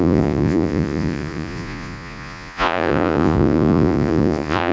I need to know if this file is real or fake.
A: fake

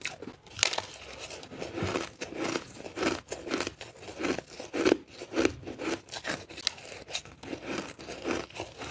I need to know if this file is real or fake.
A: real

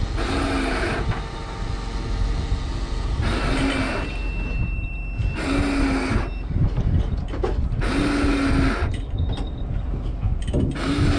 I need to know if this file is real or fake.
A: real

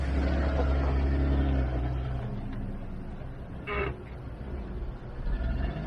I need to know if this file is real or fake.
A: real